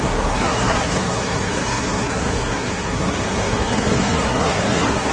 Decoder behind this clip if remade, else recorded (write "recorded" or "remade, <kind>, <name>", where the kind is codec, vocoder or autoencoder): remade, codec, SNAC